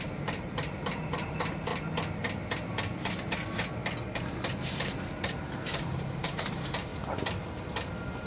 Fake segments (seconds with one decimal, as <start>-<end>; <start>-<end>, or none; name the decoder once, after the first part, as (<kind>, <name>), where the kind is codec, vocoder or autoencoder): 0.0-1.7 (vocoder, BigVGAN v2); 4.2-6.9